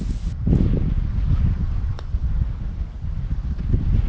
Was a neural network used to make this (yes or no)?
no